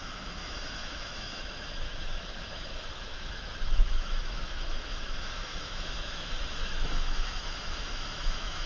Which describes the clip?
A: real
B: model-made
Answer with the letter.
B